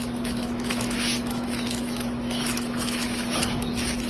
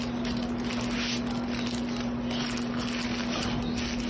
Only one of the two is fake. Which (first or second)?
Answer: first